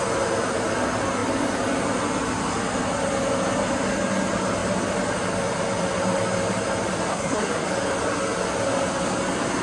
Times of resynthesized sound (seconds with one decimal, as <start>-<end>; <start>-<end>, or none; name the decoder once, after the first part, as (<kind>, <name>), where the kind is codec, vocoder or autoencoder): 7.1-7.7 (codec, SNAC)